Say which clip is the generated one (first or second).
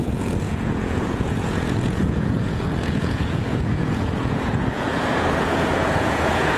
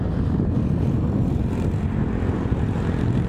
first